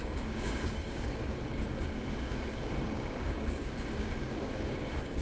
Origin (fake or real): fake